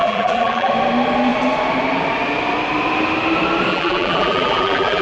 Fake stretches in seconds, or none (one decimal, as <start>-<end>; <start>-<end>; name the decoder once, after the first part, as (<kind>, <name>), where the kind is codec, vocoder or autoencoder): 0.0-0.7 (vocoder, BigVGAN v2); 3.7-5.0